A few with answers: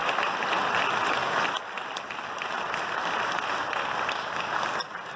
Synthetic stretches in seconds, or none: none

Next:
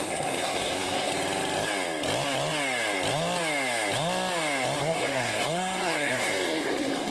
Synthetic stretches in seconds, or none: 0.0-1.1; 4.8-7.1

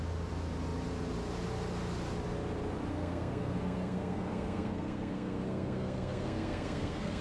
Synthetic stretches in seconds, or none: 2.9-7.2

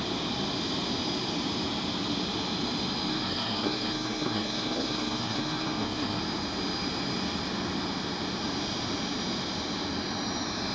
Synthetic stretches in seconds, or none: 3.1-6.2

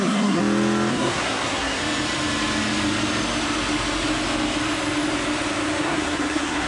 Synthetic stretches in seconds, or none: 0.0-0.4; 0.9-1.8; 5.8-6.7

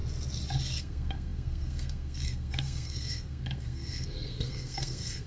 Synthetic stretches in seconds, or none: 0.8-5.3